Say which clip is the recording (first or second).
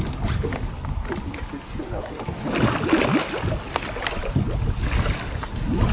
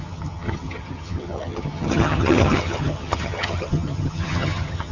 first